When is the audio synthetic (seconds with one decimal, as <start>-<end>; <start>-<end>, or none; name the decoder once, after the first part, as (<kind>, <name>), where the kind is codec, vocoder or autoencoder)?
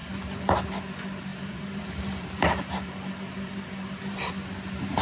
0.0-0.6 (vocoder, BigVGAN v2); 1.3-4.3